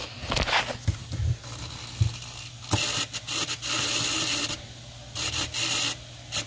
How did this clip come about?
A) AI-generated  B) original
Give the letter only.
B